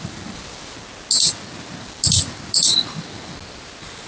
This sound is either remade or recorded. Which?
recorded